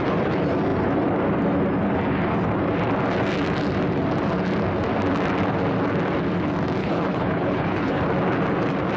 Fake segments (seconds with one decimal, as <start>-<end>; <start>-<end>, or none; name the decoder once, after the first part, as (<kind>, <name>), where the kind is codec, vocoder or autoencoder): 6.8-8.0 (codec, HILCodec)